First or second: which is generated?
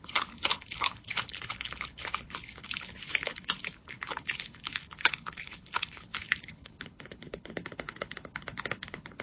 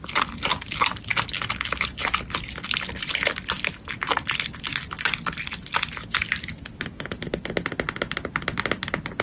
first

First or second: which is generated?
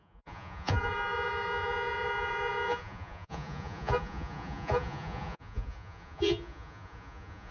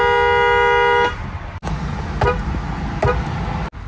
first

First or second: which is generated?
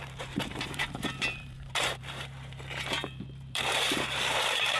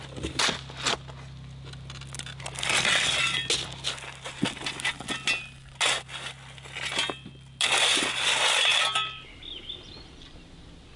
first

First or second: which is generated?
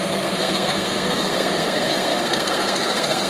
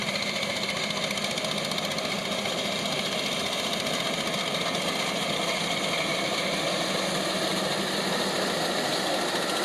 first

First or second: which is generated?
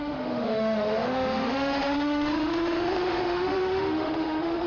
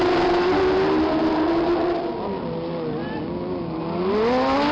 first